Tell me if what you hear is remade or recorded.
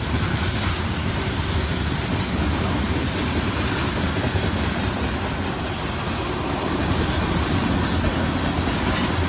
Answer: recorded